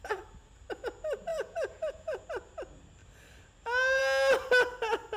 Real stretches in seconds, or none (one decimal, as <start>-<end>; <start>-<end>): 0.0-1.3; 2.2-5.2